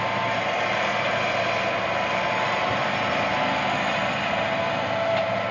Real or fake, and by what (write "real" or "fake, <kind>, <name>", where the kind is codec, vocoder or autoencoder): real